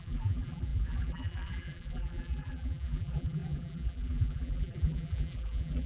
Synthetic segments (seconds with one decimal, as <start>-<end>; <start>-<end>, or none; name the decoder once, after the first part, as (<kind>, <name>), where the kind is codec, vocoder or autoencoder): 0.0-5.9 (vocoder, BigVGAN v2)